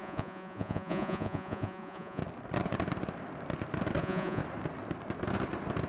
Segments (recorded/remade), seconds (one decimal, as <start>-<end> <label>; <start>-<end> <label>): 0.0-2.2 remade; 2.2-4.0 recorded; 4.0-4.4 remade; 4.4-5.9 recorded